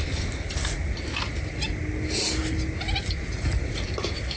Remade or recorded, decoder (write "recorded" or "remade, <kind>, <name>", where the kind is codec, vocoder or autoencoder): recorded